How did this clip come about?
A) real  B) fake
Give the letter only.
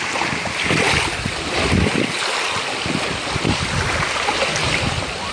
A